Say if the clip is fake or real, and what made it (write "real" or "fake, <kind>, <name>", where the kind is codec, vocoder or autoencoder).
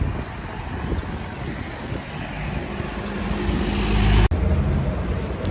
real